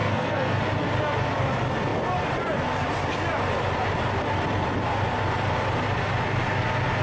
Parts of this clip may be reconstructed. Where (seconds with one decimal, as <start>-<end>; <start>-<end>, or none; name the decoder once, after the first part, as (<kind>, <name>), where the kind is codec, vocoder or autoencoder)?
0.0-0.6 (codec, SNAC)